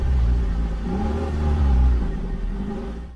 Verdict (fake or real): fake